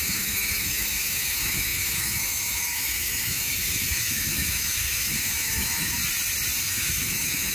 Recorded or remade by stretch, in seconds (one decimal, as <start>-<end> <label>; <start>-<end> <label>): 0.0-6.0 remade; 6.0-6.6 recorded; 6.6-7.5 remade